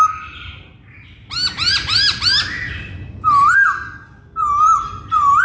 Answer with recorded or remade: recorded